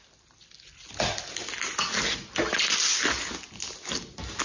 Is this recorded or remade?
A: recorded